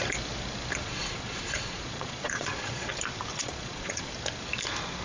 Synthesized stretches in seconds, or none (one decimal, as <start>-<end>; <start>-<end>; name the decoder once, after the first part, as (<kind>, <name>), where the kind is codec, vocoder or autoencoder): 0.8-2.9 (vocoder, Vocos); 3.3-4.1